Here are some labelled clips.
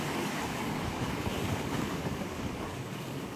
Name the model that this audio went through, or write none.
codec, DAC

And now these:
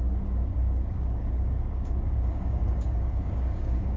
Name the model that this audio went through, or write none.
codec, DAC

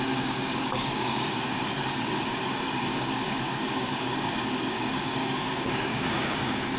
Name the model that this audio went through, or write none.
codec, DAC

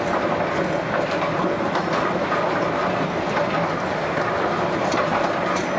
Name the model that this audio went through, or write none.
none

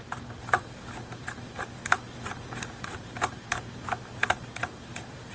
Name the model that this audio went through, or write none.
none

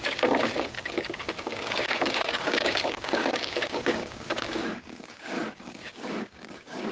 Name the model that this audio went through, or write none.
codec, DAC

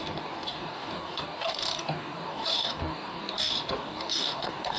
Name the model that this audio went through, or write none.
codec, DAC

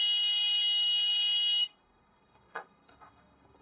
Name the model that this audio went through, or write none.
codec, DAC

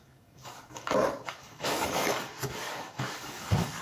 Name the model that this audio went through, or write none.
codec, DAC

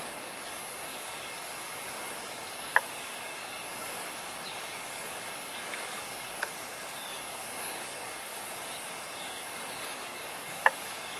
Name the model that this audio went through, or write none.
codec, DAC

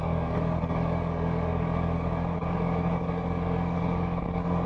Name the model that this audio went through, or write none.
codec, DAC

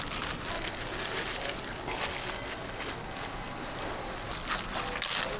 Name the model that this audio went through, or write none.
none